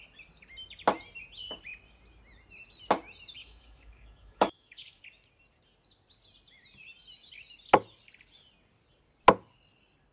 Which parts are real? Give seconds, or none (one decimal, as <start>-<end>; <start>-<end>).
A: 0.0-3.4; 5.0-10.1